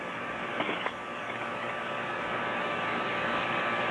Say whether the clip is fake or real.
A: fake